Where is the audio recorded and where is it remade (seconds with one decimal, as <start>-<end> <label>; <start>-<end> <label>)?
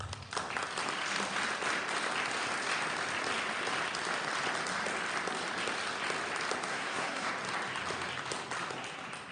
0.0-6.7 recorded; 6.7-7.3 remade; 7.3-9.3 recorded